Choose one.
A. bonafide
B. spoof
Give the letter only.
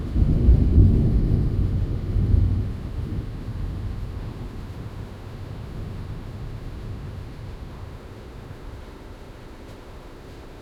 B